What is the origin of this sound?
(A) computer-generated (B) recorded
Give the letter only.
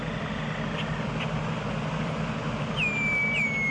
B